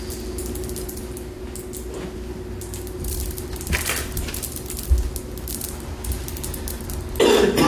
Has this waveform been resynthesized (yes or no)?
no